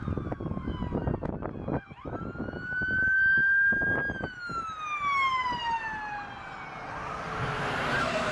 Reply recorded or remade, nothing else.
recorded